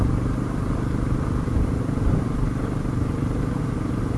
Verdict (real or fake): real